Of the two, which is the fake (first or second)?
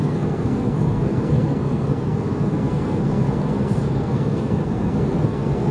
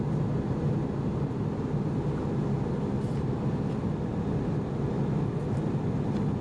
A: first